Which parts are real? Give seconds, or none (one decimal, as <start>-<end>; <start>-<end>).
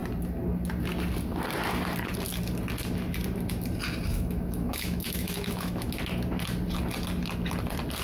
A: 0.0-4.1; 5.9-8.0